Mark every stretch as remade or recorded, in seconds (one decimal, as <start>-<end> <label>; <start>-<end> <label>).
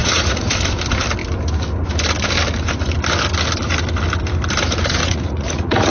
0.0-0.5 remade; 0.5-5.0 recorded; 5.0-5.9 remade